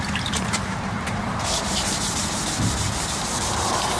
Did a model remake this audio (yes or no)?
yes